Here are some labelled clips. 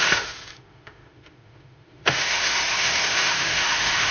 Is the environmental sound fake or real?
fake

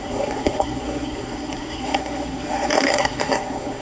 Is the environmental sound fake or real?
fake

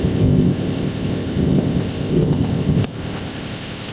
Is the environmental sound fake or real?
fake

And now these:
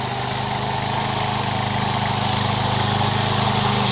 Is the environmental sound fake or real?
real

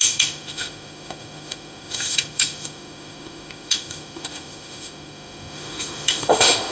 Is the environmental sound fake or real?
fake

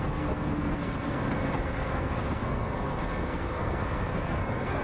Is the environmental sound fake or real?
fake